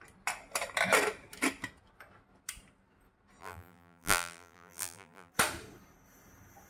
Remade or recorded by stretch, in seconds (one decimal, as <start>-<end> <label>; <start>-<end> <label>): 0.0-3.4 recorded; 3.4-5.3 remade; 5.3-6.7 recorded